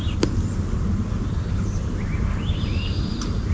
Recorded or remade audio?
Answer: recorded